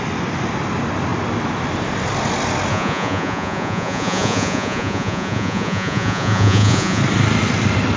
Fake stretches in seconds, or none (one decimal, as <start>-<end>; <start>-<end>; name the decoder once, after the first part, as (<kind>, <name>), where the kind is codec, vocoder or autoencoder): 2.7-7.0 (vocoder, Vocos)